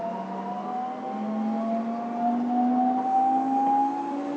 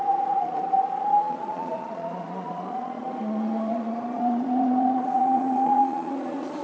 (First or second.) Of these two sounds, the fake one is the second